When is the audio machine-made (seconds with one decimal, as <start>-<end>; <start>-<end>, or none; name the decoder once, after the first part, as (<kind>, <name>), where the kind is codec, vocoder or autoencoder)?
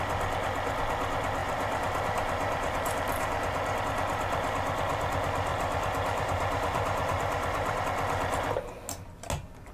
1.4-3.8 (vocoder, BigVGAN v2); 5.5-7.8